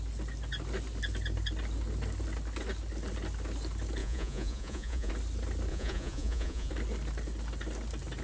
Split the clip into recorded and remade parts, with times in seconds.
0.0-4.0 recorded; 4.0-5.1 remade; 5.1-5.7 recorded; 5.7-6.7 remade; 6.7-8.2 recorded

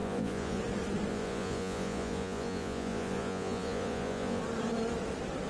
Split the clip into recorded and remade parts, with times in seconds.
0.0-0.6 remade; 0.6-1.1 recorded; 1.1-4.4 remade; 4.4-5.5 recorded

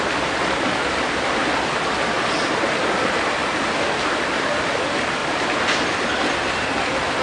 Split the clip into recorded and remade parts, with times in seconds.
0.0-7.2 recorded

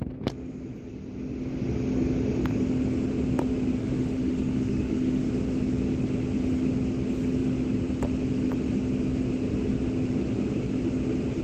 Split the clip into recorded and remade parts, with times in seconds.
0.0-3.8 recorded; 3.8-5.3 remade; 5.3-11.4 recorded

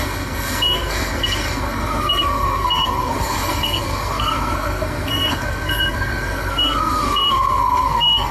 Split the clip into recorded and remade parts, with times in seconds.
0.0-8.3 remade

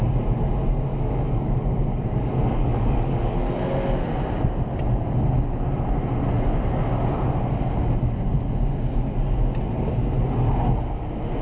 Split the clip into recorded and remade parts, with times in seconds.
0.0-0.9 recorded; 0.9-3.5 remade; 3.5-11.4 recorded